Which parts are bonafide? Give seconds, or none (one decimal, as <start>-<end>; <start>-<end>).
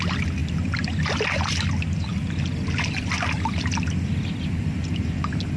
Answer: 0.0-5.6